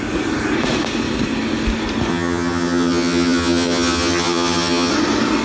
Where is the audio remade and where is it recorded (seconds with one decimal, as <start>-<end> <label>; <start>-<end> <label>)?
0.0-2.1 recorded; 2.1-4.9 remade; 4.9-5.4 recorded